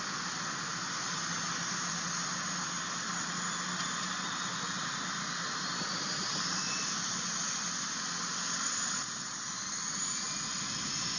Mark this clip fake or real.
real